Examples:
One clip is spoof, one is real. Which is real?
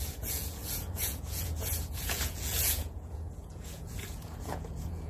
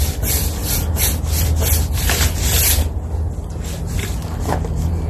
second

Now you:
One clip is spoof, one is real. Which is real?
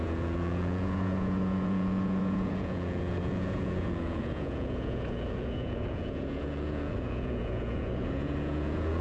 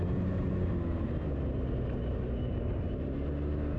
second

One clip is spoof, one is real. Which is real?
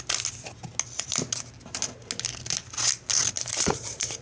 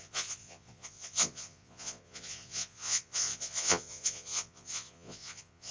first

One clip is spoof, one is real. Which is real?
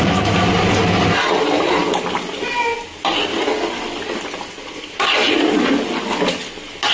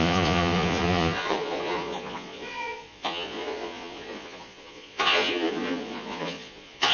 first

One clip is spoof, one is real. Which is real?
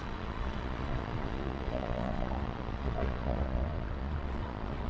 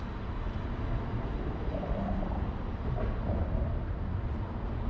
second